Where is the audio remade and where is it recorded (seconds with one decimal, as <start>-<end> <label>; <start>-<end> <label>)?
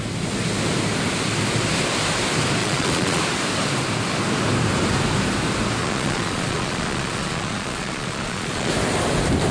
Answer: 0.0-2.6 recorded; 2.6-3.2 remade; 3.2-5.8 recorded; 5.8-8.7 remade; 8.7-9.5 recorded